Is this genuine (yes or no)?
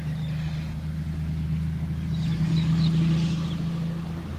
yes